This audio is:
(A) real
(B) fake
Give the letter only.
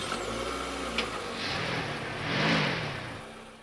A